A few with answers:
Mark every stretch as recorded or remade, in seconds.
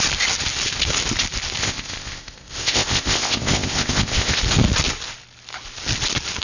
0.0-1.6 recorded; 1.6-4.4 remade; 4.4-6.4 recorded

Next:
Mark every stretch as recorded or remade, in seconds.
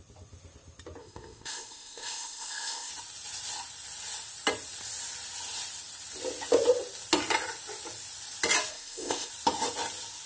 0.0-1.0 recorded; 1.0-2.9 remade; 2.9-8.7 recorded; 8.7-9.3 remade; 9.3-10.3 recorded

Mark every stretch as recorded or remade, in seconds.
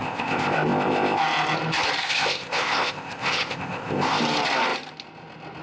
0.0-1.2 remade; 1.2-2.0 recorded; 2.0-4.2 remade; 4.2-5.6 recorded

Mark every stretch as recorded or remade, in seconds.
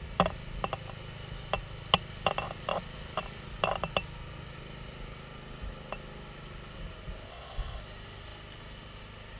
0.0-7.3 recorded; 7.3-7.8 remade; 7.8-9.4 recorded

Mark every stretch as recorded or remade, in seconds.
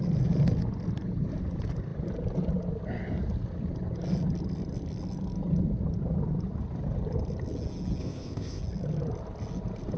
0.0-8.0 recorded; 8.0-8.6 remade; 8.6-10.0 recorded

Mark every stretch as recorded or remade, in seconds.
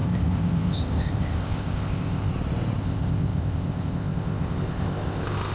0.0-2.3 remade; 2.3-2.8 recorded; 2.8-5.5 remade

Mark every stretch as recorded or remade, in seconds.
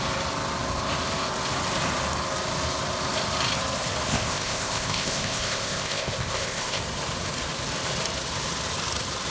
0.0-4.1 recorded; 4.1-6.8 remade; 6.8-9.3 recorded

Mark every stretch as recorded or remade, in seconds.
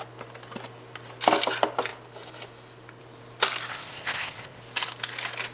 0.0-3.7 recorded; 3.7-4.6 remade; 4.6-5.5 recorded